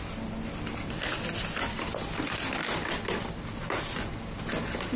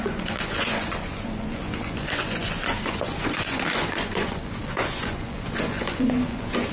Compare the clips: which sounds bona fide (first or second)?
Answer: first